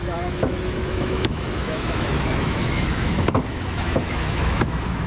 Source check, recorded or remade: remade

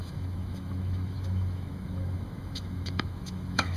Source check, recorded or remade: remade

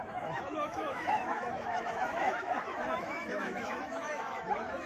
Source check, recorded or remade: remade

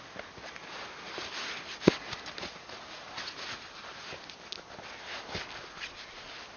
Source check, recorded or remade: recorded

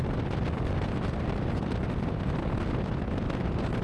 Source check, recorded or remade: recorded